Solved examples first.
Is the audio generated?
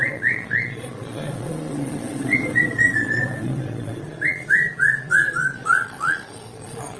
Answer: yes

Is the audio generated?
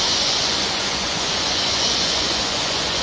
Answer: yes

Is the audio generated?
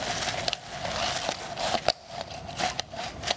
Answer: no